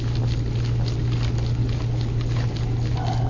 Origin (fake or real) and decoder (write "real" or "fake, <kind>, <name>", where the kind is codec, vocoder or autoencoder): real